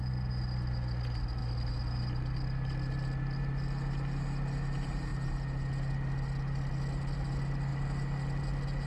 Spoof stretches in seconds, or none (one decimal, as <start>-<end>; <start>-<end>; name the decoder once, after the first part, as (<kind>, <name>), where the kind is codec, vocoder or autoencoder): none